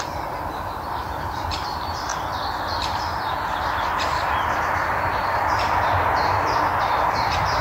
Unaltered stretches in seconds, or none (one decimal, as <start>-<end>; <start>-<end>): 0.0-7.6